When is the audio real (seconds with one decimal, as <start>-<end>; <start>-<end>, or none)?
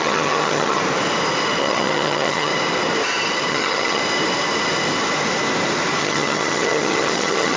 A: 0.8-1.6; 2.5-3.5; 4.0-6.0